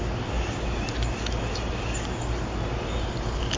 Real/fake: real